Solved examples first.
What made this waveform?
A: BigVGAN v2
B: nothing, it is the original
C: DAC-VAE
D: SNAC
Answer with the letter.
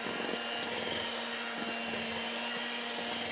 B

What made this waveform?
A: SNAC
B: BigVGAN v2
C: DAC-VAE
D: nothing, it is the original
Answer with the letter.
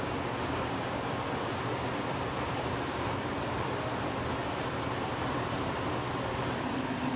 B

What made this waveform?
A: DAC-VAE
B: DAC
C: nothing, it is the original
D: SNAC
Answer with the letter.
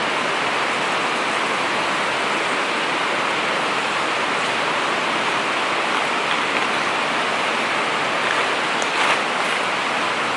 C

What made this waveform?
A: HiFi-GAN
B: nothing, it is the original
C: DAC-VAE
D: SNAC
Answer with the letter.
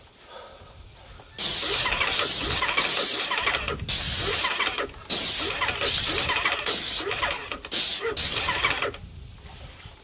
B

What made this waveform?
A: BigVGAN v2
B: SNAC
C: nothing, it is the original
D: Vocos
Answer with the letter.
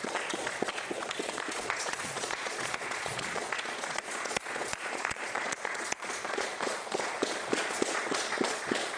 D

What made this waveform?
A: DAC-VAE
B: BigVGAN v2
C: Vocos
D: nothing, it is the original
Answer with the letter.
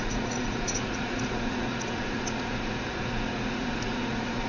C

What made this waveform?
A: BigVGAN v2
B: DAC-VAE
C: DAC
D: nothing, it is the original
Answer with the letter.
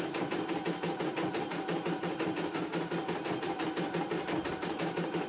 D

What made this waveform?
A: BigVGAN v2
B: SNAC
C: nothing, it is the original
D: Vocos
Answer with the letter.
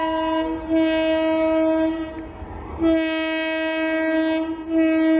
C